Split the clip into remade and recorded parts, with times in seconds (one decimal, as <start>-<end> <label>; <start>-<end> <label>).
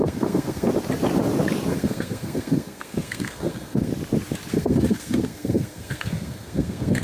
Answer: 0.0-0.7 remade; 0.7-1.7 recorded; 1.7-3.9 remade; 3.9-4.5 recorded; 4.5-7.0 remade